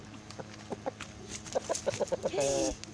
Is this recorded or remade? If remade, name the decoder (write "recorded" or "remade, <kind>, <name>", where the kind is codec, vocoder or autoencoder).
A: recorded